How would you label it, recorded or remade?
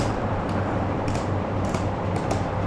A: remade